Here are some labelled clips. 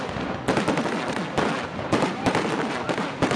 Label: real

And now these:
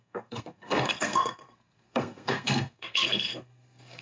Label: fake